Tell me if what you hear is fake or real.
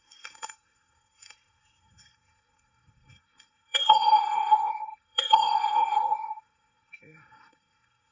fake